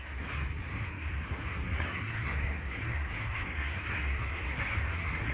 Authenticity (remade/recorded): remade